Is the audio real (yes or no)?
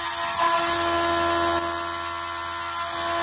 yes